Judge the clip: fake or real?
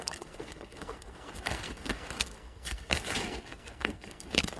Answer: fake